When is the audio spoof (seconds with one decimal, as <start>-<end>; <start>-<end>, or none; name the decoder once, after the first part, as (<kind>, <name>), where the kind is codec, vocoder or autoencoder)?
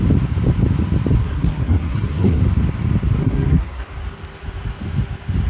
1.2-2.4 (codec, SNAC); 3.2-3.8